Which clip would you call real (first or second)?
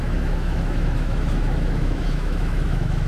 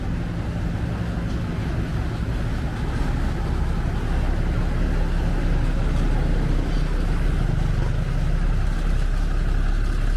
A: second